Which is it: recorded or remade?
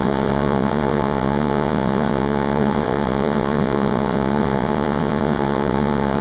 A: remade